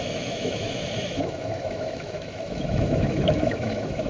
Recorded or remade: remade